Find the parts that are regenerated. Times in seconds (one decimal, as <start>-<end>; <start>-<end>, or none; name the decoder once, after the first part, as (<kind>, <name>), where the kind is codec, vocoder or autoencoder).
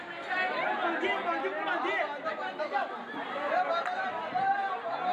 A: none